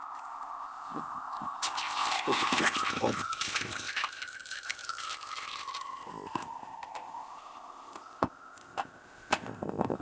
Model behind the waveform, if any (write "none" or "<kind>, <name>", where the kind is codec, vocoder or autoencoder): codec, ZipCodec